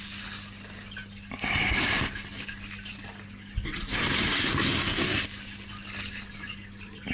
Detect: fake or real real